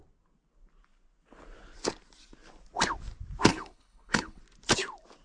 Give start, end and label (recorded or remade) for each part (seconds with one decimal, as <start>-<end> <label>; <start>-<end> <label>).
0.0-3.5 recorded; 3.5-4.4 remade; 4.4-5.2 recorded